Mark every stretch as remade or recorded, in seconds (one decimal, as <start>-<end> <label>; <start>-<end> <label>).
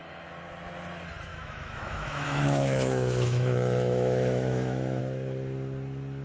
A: 0.0-1.3 recorded; 1.3-5.0 remade; 5.0-6.2 recorded